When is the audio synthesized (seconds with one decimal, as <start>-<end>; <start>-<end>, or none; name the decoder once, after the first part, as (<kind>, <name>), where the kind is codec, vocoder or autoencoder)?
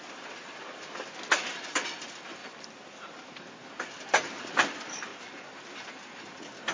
none